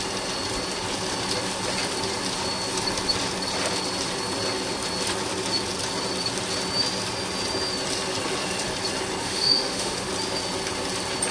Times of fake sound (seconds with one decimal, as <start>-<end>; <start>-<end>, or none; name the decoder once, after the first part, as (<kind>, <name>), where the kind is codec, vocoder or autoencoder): 9.2-10.1 (autoencoder, DAC-VAE)